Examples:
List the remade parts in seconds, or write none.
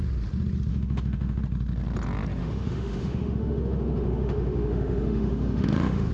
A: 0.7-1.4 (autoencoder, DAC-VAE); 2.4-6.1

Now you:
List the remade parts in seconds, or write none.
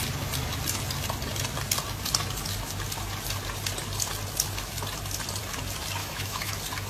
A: 6.0-6.5 (autoencoder, DAC-VAE)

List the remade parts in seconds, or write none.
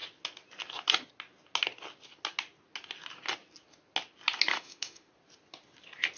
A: 4.5-5.1 (autoencoder, DAC-VAE)